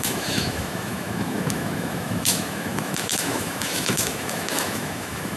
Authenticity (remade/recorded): remade